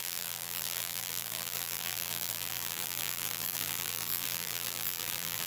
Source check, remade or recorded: remade